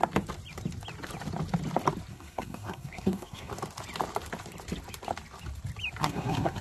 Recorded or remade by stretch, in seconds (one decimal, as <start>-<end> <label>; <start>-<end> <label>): 0.0-2.1 recorded; 2.1-3.5 remade; 3.5-6.0 recorded; 6.0-6.6 remade